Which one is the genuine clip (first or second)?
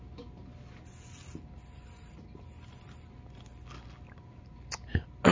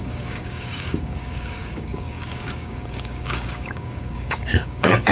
first